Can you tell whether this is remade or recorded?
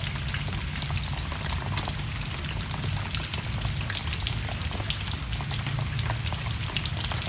recorded